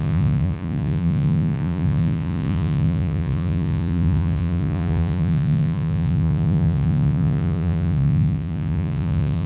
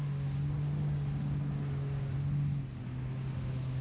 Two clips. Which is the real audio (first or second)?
second